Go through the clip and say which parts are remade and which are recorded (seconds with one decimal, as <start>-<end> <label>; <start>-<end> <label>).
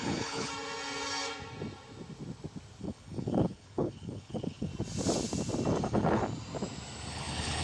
0.0-0.5 remade; 0.5-2.8 recorded; 2.8-4.7 remade; 4.7-5.8 recorded; 5.8-6.2 remade; 6.2-7.1 recorded; 7.1-7.6 remade